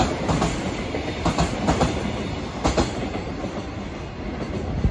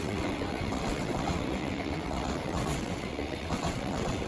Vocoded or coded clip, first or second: second